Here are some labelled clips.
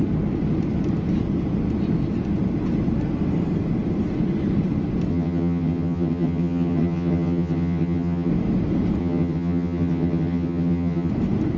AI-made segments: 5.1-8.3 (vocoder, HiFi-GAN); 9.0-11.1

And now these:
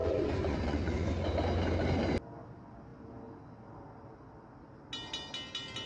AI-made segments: 0.0-1.1 (vocoder, Vocos)

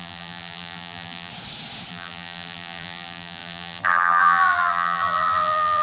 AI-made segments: 0.0-1.3 (vocoder, BigVGAN v2); 1.9-5.8

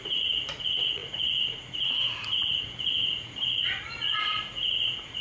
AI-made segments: 0.0-5.2 (vocoder, Vocos)

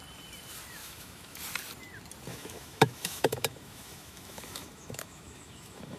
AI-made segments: 0.8-1.4 (autoencoder, DAC-VAE); 2.3-6.0

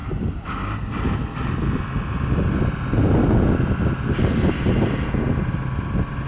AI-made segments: none

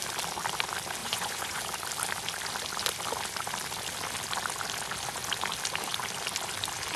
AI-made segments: 1.0-1.6 (vocoder, Vocos)

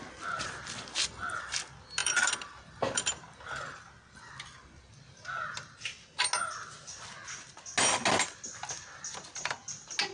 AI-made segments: 2.0-3.8 (vocoder, BigVGAN v2)